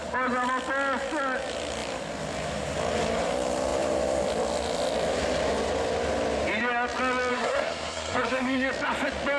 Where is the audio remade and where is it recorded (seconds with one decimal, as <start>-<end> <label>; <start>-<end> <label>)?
0.0-7.3 recorded; 7.3-8.7 remade; 8.7-9.4 recorded